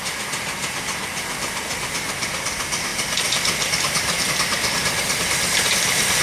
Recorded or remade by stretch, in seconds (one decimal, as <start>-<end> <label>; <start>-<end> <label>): 0.0-6.2 recorded